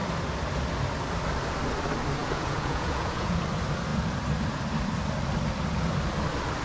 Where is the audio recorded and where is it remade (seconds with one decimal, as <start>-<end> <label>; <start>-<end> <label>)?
0.0-2.2 recorded; 2.2-3.4 remade; 3.4-6.6 recorded